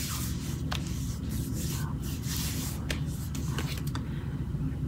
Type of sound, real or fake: real